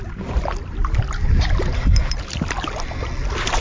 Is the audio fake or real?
real